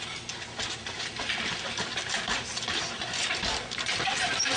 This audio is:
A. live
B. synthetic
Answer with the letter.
B